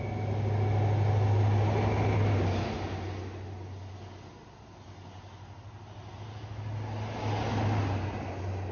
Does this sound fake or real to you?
real